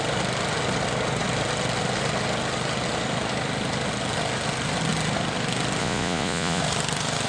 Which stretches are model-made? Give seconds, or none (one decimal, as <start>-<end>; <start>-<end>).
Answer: 5.8-6.6